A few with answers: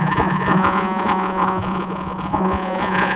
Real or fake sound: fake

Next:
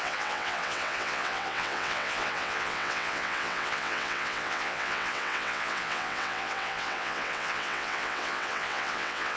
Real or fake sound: fake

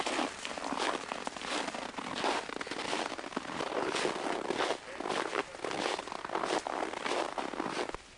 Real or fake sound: real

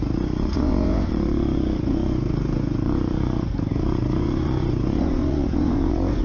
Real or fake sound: fake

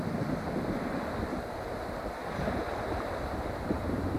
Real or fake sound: real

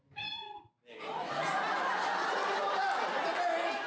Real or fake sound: real